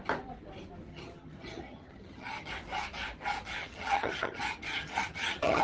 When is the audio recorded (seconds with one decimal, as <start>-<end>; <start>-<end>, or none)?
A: 0.0-0.9; 2.5-3.6